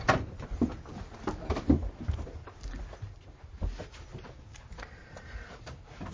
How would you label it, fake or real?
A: real